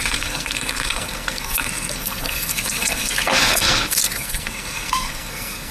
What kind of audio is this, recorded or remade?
remade